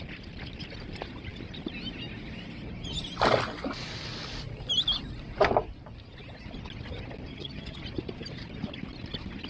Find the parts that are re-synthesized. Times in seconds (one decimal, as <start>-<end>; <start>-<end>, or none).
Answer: 7.3-7.8